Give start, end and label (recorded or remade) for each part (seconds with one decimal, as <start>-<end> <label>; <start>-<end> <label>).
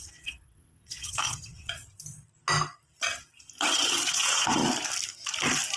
0.0-1.9 remade; 1.9-3.7 recorded; 3.7-4.6 remade; 4.6-5.8 recorded